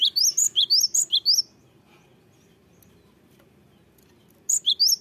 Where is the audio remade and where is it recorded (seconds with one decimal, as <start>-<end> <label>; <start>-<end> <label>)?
0.0-5.0 recorded